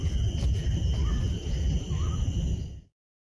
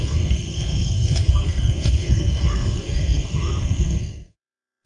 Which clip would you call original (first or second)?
first